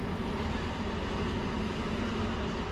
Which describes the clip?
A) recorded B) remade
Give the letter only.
A